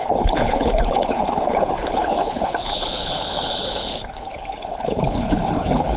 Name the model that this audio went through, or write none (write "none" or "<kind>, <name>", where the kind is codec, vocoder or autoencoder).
codec, HILCodec